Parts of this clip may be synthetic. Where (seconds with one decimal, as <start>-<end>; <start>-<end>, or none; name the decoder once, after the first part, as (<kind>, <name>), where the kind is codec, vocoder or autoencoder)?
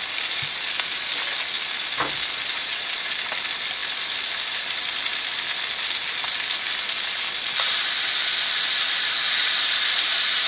2.5-3.1 (vocoder, Vocos)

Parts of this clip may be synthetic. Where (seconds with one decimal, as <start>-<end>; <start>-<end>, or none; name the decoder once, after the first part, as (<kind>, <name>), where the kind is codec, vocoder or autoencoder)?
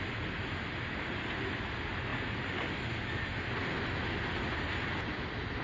none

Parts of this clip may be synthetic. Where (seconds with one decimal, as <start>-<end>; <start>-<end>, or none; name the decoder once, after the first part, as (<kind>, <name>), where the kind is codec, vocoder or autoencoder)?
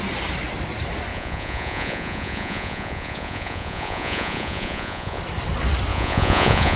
1.1-5.2 (vocoder, Vocos); 5.9-6.8